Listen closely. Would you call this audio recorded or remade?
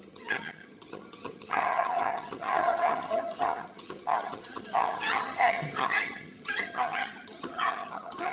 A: remade